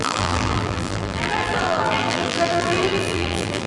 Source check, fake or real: fake